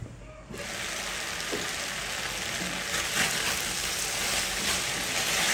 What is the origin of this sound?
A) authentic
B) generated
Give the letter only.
A